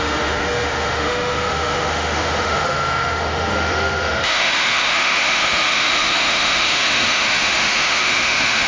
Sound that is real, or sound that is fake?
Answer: fake